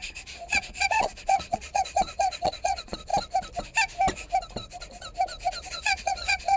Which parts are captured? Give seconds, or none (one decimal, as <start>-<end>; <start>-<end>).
3.1-5.7